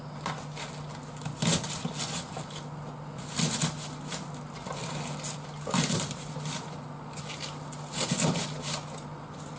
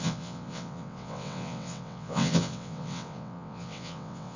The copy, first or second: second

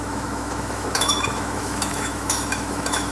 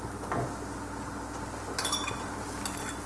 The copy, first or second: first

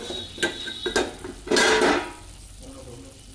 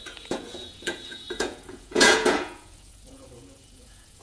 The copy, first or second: second